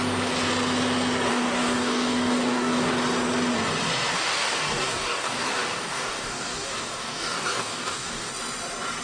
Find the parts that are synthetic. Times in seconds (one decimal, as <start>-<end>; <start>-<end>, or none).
1.3-2.9; 4.1-8.3